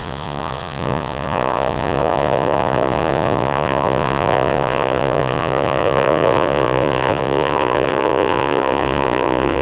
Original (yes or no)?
no